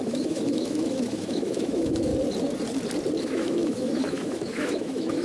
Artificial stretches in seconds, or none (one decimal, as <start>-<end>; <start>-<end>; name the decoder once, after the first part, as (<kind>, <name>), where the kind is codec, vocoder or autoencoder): 0.0-2.1 (autoencoder, DAC-VAE); 3.2-5.2